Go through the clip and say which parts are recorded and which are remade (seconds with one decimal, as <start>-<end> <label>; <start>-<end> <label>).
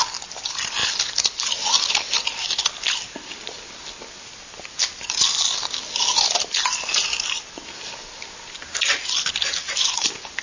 0.0-10.4 recorded